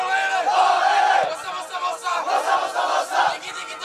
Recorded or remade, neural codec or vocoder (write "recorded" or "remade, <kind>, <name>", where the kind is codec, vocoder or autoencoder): recorded